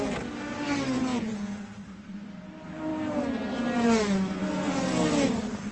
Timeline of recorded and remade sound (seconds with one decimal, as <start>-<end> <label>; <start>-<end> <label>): 0.0-1.1 recorded; 1.1-1.6 remade; 1.6-5.7 recorded